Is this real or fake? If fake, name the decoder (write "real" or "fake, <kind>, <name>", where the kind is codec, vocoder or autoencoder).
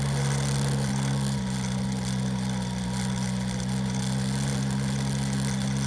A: real